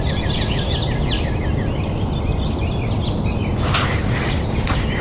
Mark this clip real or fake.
real